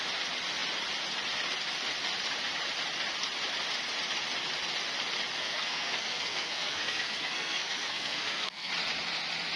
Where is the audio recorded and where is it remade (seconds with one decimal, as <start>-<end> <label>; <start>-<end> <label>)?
0.0-5.4 recorded; 5.4-8.7 remade; 8.7-9.6 recorded